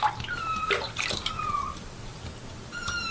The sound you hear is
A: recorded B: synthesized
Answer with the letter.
A